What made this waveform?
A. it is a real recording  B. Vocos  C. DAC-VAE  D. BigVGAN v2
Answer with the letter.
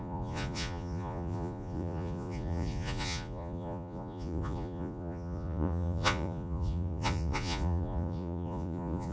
B